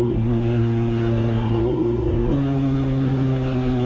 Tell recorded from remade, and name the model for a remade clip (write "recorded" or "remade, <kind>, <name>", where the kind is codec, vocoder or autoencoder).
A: remade, codec, SNAC